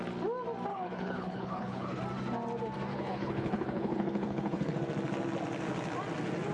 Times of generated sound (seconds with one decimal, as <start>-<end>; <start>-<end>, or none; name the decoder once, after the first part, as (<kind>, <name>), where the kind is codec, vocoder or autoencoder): 0.7-2.0 (codec, HILCodec); 2.9-4.8